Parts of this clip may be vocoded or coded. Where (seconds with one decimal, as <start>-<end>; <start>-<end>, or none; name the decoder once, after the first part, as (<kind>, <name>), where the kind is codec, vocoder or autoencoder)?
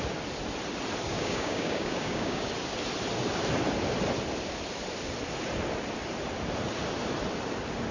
1.1-2.5 (codec, DAC)